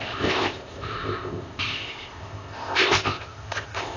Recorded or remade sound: remade